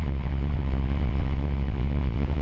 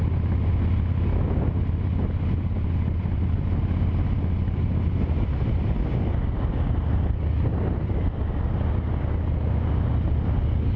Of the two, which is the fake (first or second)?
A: first